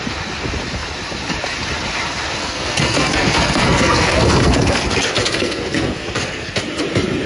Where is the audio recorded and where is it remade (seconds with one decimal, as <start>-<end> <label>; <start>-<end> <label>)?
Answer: 0.0-2.4 recorded; 2.4-6.6 remade; 6.6-7.3 recorded